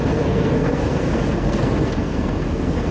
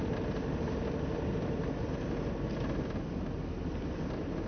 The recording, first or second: second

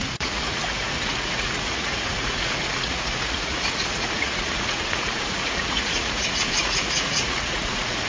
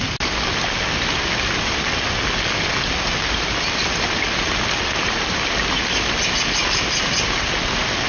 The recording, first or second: second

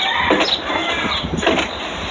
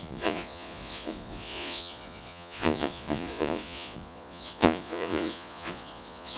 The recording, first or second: first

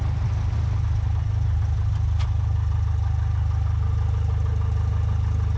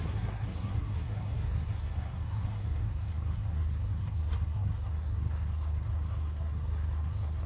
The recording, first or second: first